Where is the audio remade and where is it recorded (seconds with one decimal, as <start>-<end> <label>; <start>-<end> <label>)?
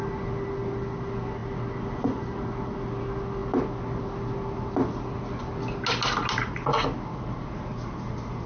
0.0-8.5 recorded